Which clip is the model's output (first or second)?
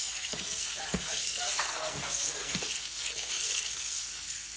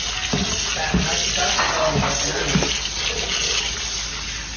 first